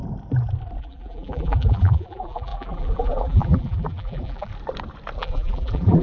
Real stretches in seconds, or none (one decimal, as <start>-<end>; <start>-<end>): 0.0-0.8; 4.5-5.2